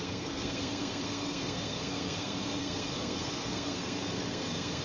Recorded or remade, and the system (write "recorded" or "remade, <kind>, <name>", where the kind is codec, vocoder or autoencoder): remade, codec, SNAC